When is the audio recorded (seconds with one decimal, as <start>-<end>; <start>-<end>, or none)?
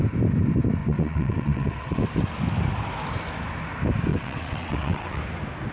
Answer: 0.0-0.8; 2.0-4.1; 5.2-5.7